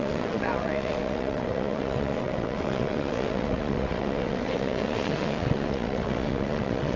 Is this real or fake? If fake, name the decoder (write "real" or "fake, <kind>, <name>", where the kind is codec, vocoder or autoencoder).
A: fake, vocoder, WaveNeXt